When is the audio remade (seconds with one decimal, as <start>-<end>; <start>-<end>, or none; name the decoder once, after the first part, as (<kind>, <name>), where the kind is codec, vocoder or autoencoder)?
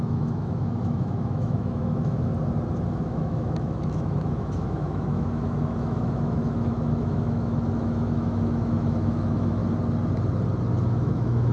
0.0-2.3 (autoencoder, DAC-VAE); 2.9-9.6; 10.8-11.5